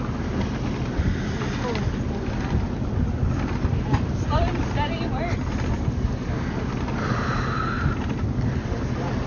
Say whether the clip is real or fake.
real